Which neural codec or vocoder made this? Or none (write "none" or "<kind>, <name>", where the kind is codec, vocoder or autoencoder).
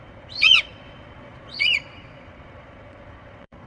vocoder, Vocos